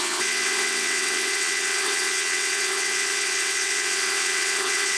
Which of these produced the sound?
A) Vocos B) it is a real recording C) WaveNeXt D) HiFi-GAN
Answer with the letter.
C